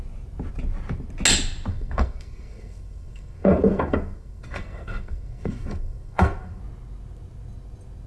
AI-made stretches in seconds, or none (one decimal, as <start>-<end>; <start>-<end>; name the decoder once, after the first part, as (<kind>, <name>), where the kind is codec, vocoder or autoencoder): 1.7-6.6 (codec, SNAC)

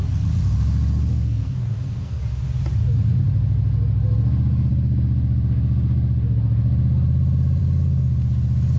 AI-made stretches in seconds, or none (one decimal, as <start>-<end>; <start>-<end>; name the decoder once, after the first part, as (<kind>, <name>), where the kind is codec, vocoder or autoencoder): 1.1-2.2 (codec, SNAC)

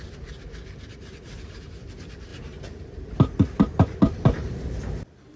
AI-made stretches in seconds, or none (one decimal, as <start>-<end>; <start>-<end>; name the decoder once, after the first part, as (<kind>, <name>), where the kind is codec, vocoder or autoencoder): none

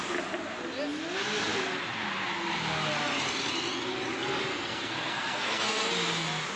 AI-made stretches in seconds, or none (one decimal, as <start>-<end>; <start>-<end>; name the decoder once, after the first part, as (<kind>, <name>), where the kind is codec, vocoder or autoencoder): 4.5-5.9 (codec, SNAC)

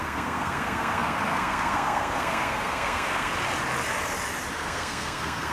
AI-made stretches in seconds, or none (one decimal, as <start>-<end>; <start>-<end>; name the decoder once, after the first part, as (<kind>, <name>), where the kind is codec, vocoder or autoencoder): 0.0-3.3 (codec, SNAC); 4.5-5.5

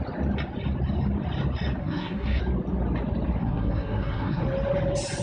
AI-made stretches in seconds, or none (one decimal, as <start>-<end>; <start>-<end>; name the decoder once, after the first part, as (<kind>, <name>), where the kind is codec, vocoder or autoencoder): 1.8-2.4 (codec, SNAC); 3.4-4.4

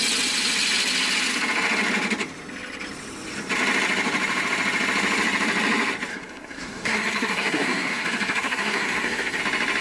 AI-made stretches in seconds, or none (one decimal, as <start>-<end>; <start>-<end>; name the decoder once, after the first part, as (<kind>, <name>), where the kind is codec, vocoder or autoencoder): 6.1-9.4 (codec, SNAC)